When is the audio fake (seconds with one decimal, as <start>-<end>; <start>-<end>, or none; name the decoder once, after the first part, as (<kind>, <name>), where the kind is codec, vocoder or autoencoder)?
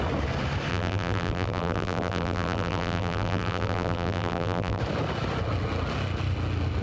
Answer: 0.7-4.8 (vocoder, BigVGAN v2)